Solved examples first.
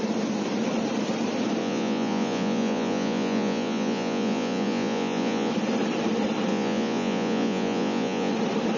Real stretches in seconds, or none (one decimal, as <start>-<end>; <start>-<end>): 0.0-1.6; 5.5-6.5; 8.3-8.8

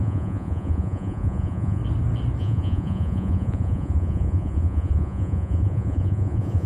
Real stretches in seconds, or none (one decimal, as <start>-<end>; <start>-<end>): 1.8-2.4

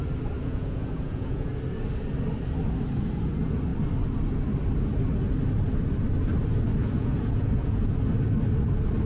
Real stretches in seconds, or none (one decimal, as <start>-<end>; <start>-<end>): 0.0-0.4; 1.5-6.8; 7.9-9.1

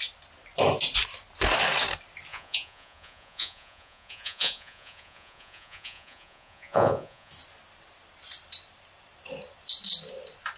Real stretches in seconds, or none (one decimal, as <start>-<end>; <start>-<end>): 0.0-2.3; 7.3-10.6

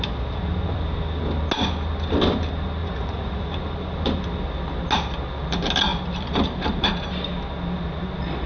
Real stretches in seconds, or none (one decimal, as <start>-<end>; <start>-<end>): 0.0-2.8; 3.5-8.5